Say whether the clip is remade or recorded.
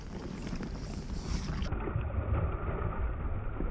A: recorded